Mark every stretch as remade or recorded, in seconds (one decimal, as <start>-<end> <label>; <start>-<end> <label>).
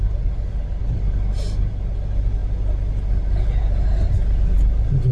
0.0-0.8 recorded; 0.8-1.7 remade; 1.7-5.1 recorded